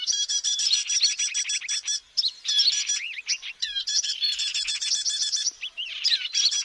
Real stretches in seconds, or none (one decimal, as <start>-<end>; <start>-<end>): 0.8-2.2; 4.5-5.4